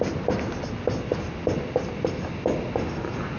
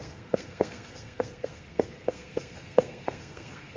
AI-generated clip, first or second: second